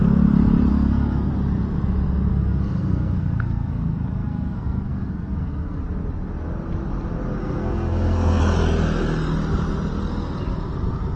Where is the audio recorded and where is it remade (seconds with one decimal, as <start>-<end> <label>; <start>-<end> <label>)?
0.0-0.7 recorded; 0.7-1.3 remade; 1.3-2.3 recorded; 2.3-5.8 remade; 5.8-7.4 recorded; 7.4-8.4 remade; 8.4-11.2 recorded